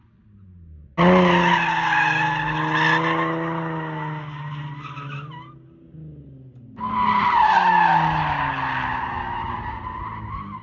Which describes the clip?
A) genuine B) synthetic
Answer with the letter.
A